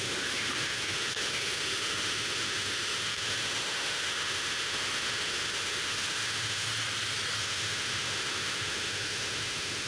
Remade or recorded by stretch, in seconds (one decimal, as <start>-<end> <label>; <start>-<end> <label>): 0.0-6.7 remade; 6.7-7.4 recorded; 7.4-9.9 remade